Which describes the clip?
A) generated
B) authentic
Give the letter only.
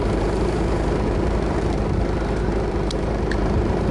A